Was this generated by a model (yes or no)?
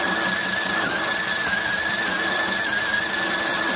no